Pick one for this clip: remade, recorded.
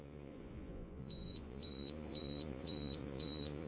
remade